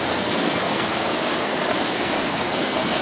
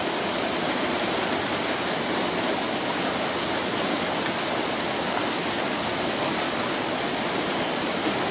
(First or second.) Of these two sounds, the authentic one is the second